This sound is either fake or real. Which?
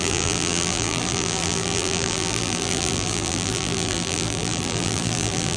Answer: fake